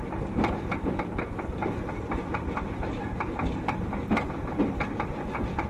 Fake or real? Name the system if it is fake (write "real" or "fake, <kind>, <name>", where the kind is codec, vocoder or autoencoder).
real